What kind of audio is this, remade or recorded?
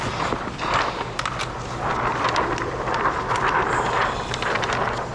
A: recorded